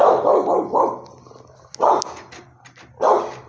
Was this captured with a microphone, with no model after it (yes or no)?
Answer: yes